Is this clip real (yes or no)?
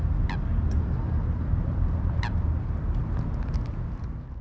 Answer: yes